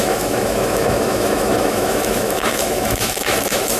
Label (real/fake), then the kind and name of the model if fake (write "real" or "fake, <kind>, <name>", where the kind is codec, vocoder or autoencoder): fake, autoencoder, DAC-VAE